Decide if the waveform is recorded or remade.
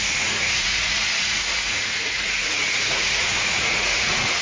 remade